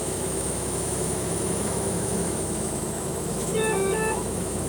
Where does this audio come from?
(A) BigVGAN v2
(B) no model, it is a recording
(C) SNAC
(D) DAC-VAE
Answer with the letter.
D